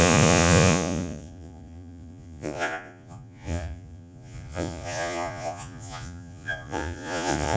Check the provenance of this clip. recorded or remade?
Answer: remade